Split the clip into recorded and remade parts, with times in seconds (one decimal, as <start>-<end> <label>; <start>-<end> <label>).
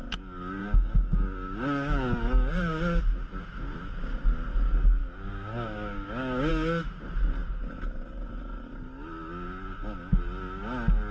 0.0-0.6 recorded; 0.6-3.0 remade; 3.0-5.0 recorded; 5.0-6.5 remade; 6.5-11.1 recorded